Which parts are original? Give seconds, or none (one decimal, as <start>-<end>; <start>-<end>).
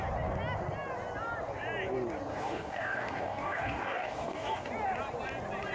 0.0-2.3; 4.7-5.7